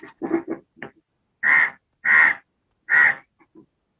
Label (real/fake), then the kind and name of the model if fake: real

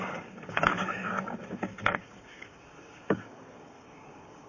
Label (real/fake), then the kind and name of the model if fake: fake, codec, DAC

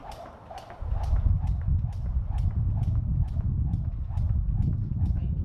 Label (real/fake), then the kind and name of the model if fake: real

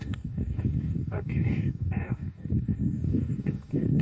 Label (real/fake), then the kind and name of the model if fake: fake, codec, DAC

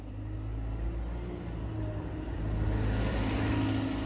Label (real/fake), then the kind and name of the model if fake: real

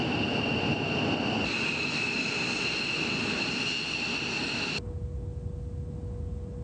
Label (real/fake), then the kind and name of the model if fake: real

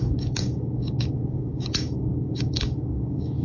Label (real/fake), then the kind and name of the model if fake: fake, codec, DAC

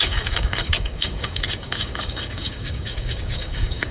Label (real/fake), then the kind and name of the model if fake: fake, codec, DAC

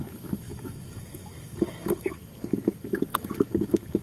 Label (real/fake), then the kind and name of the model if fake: fake, codec, DAC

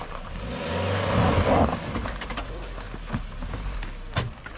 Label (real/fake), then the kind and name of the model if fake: real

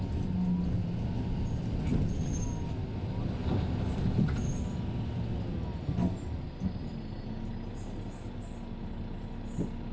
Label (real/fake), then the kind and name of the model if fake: real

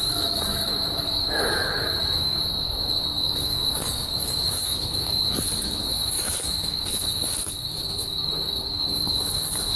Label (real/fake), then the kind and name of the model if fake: fake, codec, DAC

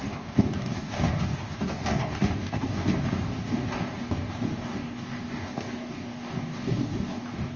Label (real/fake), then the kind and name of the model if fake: fake, codec, DAC